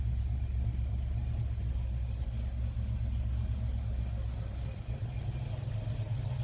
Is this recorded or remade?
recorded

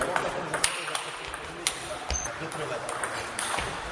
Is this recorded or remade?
recorded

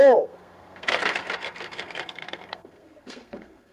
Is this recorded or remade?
remade